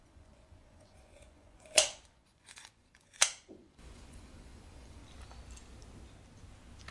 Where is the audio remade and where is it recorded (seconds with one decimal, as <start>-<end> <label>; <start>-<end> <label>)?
0.0-5.0 remade; 5.0-6.9 recorded